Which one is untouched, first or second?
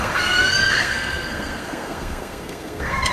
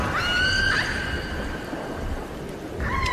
second